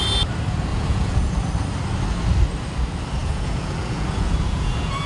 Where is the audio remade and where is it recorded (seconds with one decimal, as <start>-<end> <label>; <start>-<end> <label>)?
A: 0.0-0.7 recorded; 0.7-1.3 remade; 1.3-3.2 recorded; 3.2-5.1 remade